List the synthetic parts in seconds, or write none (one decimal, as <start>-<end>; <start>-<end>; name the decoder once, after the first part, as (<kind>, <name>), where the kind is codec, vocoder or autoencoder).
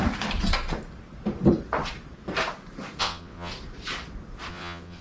3.0-3.5 (vocoder, WaveNeXt); 4.5-5.0